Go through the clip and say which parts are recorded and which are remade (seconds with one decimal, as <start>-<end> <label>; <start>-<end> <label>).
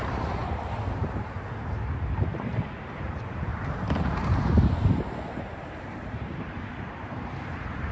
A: 0.0-7.9 remade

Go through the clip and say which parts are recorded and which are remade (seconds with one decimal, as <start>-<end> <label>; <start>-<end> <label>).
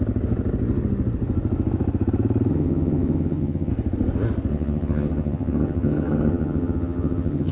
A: 0.0-2.5 recorded; 2.5-3.7 remade; 3.7-4.5 recorded; 4.5-7.5 remade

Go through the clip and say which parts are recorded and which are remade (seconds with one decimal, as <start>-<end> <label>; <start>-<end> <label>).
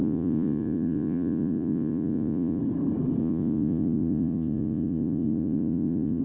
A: 0.0-2.6 remade; 2.6-3.2 recorded; 3.2-6.2 remade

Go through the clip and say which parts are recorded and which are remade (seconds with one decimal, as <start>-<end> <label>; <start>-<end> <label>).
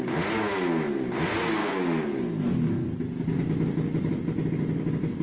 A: 0.0-1.6 recorded; 1.6-2.2 remade; 2.2-5.2 recorded